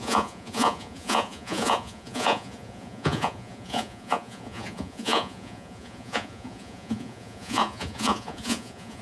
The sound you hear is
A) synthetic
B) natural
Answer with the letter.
A